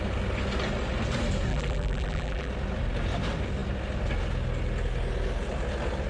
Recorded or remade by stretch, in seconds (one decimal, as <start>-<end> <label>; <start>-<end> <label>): 0.0-1.5 recorded; 1.5-2.5 remade; 2.5-6.1 recorded